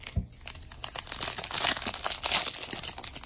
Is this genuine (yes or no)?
yes